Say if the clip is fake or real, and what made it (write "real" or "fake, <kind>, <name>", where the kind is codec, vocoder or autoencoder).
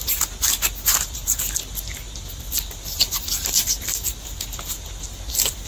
real